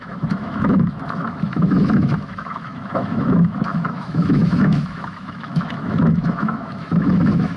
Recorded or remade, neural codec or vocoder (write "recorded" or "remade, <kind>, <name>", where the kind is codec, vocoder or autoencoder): remade, autoencoder, DAC-VAE